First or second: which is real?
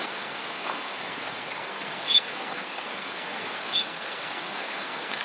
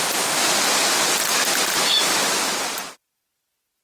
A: second